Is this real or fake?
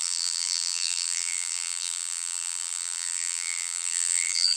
fake